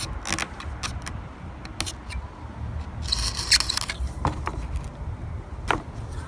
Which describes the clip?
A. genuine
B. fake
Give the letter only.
A